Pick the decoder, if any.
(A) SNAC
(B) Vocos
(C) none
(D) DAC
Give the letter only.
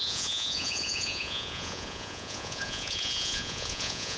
B